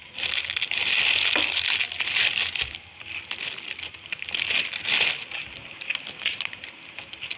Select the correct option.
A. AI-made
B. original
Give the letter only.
B